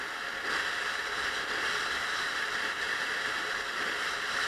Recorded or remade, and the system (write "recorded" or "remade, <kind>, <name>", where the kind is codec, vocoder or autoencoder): recorded